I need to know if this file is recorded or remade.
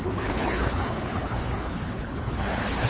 remade